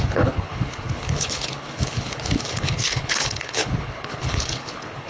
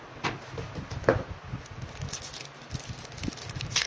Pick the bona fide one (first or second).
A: second